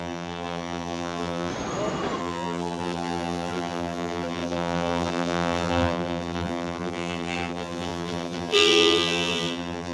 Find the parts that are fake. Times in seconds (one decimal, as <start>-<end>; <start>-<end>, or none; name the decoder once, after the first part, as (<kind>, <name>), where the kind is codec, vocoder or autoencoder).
0.0-1.5 (vocoder, BigVGAN v2); 2.2-9.9